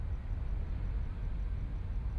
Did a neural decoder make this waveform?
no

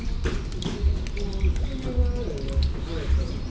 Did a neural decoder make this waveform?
no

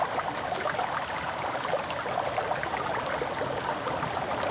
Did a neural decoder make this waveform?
no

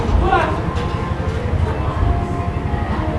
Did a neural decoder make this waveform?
no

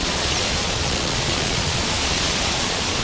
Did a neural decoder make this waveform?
yes